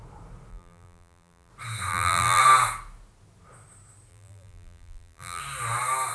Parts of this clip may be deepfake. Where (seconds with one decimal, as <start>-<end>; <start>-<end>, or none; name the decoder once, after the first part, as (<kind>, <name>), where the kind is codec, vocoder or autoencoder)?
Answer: 0.5-1.5 (vocoder, BigVGAN v2); 1.9-2.4; 4.1-5.4